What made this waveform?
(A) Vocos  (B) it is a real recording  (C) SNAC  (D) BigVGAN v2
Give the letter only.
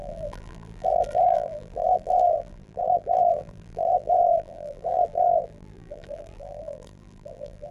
D